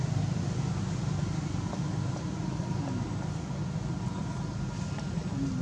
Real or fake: real